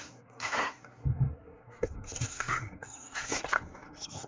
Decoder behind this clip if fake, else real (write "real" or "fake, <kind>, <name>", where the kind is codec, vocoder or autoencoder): fake, codec, SNAC